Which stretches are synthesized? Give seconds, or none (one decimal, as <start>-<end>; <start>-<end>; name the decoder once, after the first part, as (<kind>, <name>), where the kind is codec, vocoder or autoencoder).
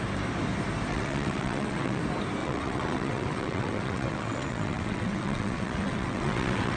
0.9-2.0 (vocoder, WaveNeXt); 2.4-6.8